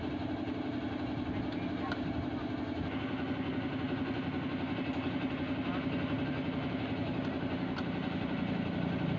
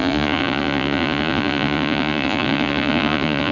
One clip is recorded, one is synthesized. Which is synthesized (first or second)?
second